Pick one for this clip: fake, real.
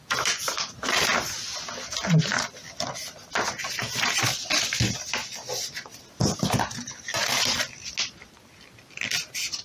real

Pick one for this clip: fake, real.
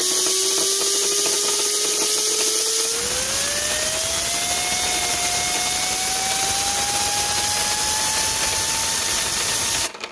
real